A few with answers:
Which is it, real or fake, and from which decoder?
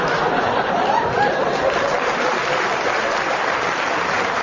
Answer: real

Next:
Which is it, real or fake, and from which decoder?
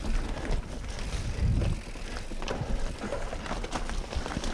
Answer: real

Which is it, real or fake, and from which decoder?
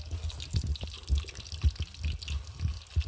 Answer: real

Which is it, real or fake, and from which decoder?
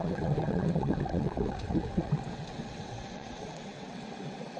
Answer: fake, vocoder, WaveNeXt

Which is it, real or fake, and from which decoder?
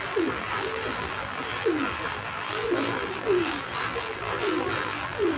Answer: fake, vocoder, BigVGAN v2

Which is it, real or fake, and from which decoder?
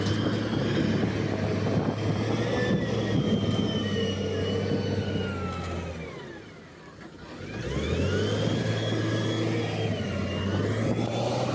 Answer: real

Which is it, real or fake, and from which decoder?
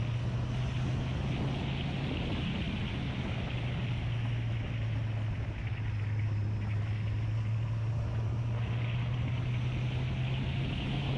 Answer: real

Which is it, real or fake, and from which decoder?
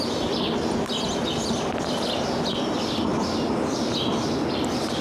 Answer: real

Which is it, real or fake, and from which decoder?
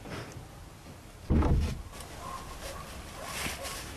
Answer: real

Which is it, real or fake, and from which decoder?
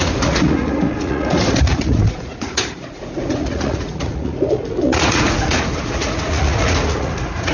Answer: fake, vocoder, Vocos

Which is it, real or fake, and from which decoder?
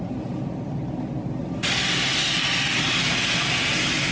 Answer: real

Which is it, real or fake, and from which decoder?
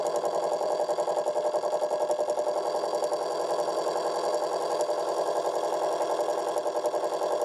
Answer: real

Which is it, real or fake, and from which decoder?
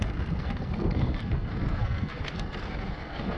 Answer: fake, codec, SNAC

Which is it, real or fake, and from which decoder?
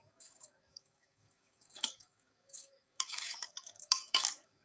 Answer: fake, codec, DAC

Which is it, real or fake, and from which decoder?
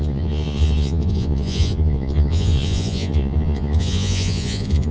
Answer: fake, vocoder, Vocos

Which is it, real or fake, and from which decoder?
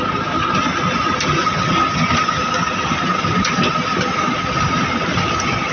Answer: real